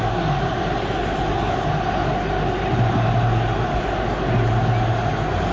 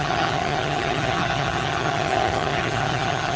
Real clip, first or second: first